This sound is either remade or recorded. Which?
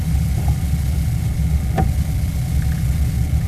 recorded